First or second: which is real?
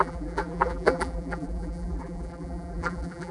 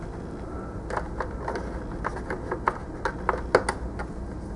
second